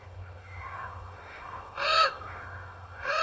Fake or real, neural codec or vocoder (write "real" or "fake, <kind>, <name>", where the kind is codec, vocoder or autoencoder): fake, autoencoder, DAC-VAE